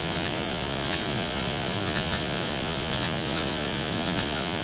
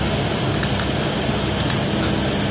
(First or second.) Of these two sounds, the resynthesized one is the first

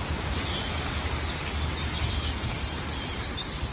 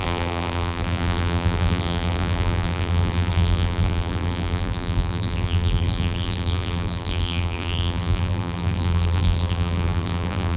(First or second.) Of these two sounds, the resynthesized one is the second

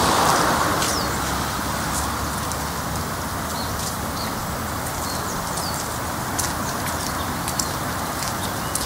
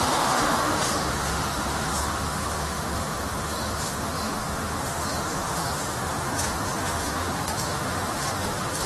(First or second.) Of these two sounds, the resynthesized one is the second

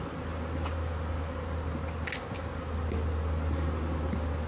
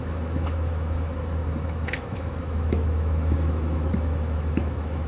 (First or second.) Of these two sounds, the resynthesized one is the second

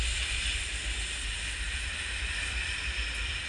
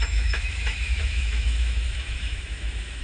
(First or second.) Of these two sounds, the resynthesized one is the second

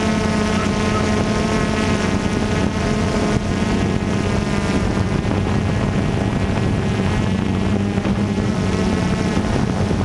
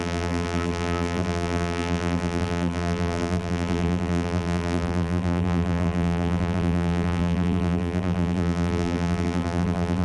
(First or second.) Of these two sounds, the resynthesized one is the second